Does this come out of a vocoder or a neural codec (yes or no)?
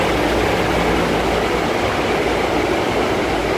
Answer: no